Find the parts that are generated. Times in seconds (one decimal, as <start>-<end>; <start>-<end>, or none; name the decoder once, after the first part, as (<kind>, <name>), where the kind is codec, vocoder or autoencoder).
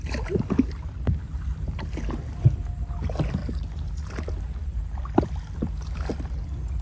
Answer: none